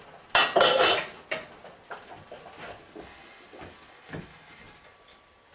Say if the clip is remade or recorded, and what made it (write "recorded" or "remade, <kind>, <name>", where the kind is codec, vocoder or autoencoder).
recorded